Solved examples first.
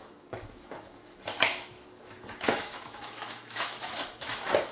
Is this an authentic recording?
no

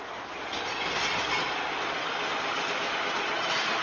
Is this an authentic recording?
yes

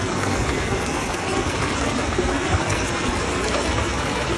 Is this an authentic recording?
no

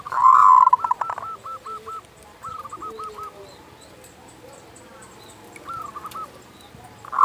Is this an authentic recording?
no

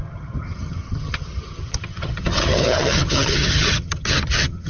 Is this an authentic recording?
no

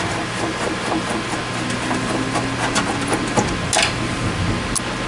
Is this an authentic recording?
yes